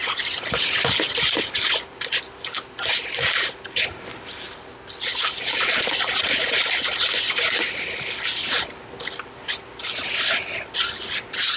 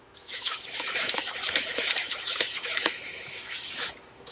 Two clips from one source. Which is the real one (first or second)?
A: first